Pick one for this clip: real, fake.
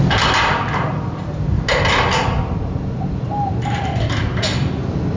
real